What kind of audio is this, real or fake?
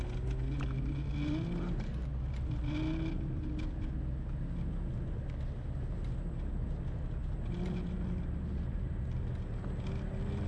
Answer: real